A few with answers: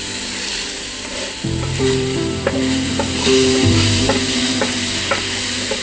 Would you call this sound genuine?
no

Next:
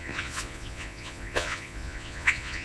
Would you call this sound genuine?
no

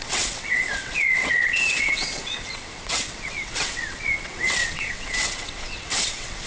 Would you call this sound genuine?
no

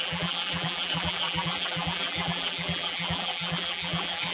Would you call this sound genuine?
no